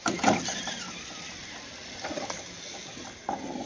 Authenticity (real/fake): real